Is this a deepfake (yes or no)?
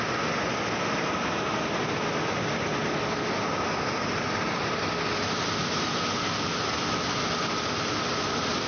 no